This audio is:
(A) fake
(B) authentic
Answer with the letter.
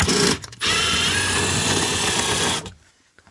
A